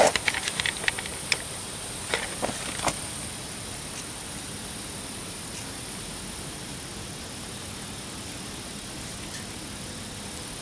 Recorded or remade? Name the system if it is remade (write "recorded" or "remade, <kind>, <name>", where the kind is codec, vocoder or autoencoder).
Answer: recorded